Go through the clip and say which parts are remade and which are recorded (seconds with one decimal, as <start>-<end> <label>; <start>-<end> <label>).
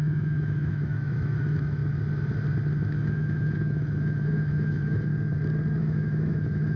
0.0-1.8 remade; 1.8-2.9 recorded; 2.9-5.1 remade; 5.1-5.8 recorded; 5.8-6.8 remade